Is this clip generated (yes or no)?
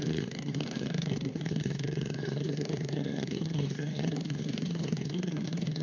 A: yes